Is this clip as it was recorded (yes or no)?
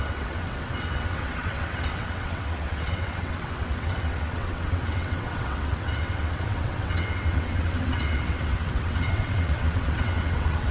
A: no